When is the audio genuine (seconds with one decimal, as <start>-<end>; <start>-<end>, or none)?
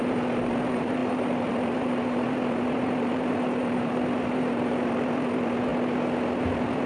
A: 5.7-6.4